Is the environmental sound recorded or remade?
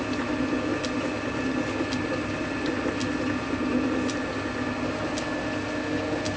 recorded